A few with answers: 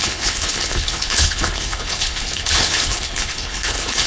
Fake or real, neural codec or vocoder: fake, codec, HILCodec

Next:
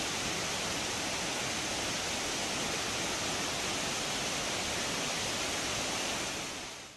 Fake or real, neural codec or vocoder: real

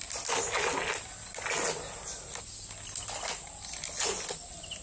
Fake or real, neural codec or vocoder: real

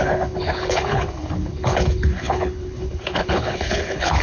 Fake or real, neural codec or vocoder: fake, codec, HILCodec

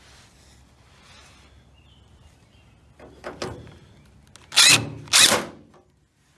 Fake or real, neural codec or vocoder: real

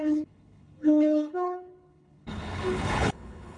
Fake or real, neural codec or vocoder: fake, codec, HILCodec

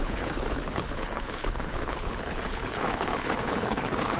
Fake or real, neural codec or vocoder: fake, codec, HILCodec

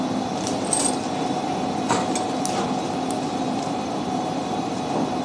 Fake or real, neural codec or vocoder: real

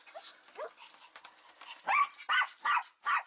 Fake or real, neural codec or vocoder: real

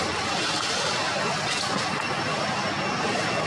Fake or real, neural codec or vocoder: real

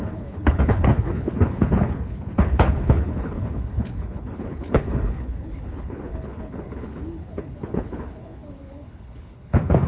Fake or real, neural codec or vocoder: fake, codec, HILCodec